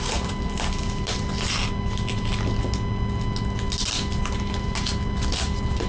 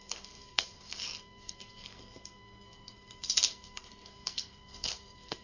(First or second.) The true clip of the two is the first